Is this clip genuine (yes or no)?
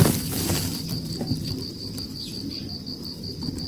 no